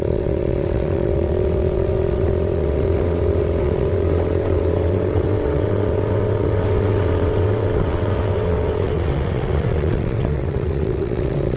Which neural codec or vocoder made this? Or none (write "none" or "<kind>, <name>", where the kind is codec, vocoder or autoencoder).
vocoder, WaveNeXt